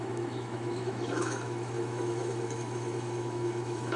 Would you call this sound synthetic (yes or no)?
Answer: yes